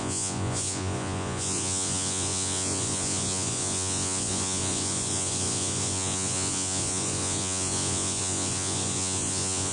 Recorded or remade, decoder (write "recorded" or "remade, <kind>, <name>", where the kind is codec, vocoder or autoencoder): remade, vocoder, Vocos